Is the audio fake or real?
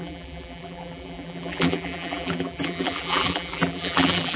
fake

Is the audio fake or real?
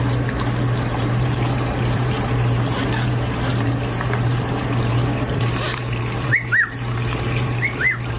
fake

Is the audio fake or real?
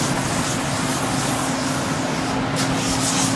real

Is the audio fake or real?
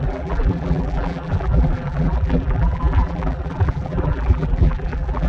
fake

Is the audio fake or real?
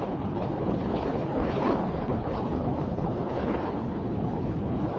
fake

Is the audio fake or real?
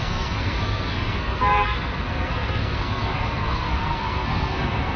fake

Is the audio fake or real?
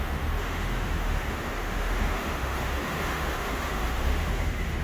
fake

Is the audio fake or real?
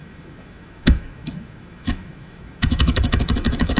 fake